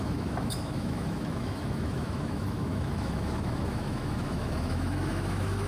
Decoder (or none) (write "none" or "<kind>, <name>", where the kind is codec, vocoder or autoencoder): autoencoder, DAC-VAE